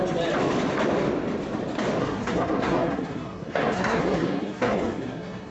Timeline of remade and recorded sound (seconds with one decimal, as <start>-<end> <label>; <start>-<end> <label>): 0.0-2.0 recorded; 2.0-5.5 remade

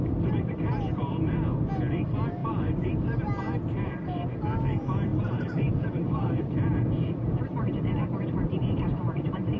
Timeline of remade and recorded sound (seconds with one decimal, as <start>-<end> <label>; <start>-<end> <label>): 0.0-2.4 recorded; 2.4-3.4 remade; 3.4-5.1 recorded; 5.1-6.5 remade; 6.5-8.6 recorded; 8.6-9.6 remade

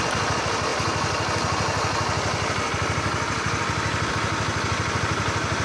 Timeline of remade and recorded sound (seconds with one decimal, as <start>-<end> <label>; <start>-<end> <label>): 0.0-5.6 recorded

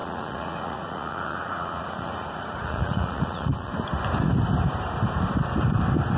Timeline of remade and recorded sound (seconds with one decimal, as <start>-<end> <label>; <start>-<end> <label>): 0.0-3.7 remade; 3.7-6.2 recorded

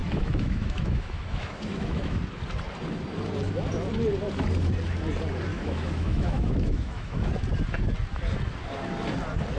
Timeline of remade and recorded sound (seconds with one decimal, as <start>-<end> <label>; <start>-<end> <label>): 0.0-2.2 remade; 2.2-5.5 recorded; 5.5-7.3 remade; 7.3-9.6 recorded

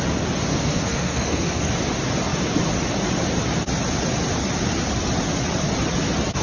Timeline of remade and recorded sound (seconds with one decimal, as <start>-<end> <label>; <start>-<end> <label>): 0.0-0.5 recorded; 0.5-1.7 remade; 1.7-6.4 recorded

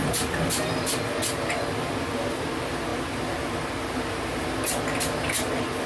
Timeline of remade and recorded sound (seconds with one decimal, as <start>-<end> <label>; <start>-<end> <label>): 0.0-0.8 remade; 0.8-5.9 recorded